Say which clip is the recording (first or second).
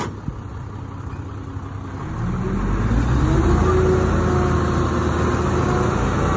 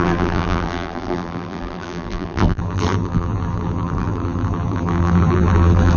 first